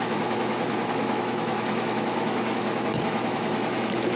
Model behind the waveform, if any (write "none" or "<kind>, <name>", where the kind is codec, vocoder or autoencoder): autoencoder, DAC-VAE